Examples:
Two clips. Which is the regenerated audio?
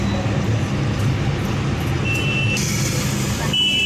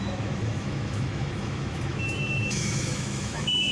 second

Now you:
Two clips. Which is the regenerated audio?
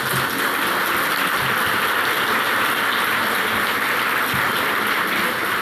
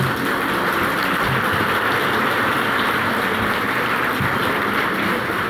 second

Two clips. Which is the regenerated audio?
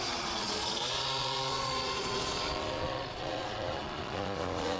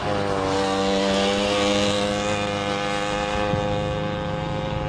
first